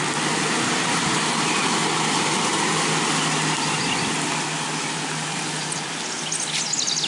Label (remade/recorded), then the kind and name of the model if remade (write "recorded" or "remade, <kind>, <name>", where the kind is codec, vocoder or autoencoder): recorded